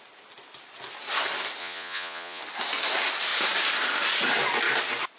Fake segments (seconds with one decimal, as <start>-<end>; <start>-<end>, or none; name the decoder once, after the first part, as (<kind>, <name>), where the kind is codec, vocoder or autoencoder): 1.6-2.4 (vocoder, Vocos)

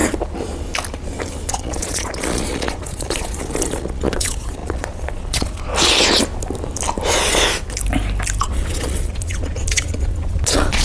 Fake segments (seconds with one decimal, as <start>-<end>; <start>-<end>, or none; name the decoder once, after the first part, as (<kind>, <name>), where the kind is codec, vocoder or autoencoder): 1.5-5.7 (vocoder, Vocos); 8.4-10.8

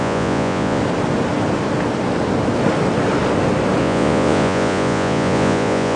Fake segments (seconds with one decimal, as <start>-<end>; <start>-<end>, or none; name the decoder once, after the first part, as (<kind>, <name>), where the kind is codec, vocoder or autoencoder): 0.0-0.8 (vocoder, Vocos); 3.8-6.0

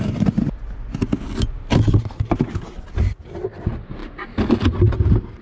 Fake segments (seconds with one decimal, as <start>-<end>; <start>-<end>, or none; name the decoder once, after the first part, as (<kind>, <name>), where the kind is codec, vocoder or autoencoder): none

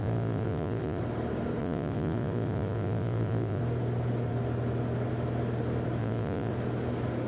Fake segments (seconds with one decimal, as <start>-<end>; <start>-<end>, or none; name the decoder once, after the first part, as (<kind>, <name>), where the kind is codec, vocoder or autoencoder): 0.0-1.0 (vocoder, Vocos); 1.6-3.6; 6.0-6.5

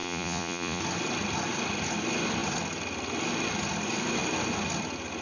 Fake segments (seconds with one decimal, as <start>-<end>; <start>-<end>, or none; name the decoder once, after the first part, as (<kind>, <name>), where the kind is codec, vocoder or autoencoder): 0.0-0.8 (vocoder, Vocos)

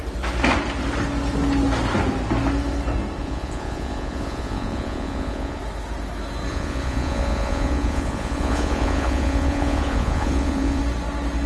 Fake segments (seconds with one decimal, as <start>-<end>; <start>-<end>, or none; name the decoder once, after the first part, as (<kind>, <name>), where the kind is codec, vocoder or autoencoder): 3.2-5.6 (vocoder, Vocos); 6.5-10.8